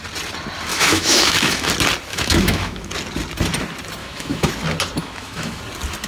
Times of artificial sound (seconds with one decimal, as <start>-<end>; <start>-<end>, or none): 0.7-1.7; 2.1-2.9; 4.0-4.5; 5.0-5.6